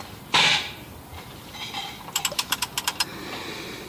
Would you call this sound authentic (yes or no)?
yes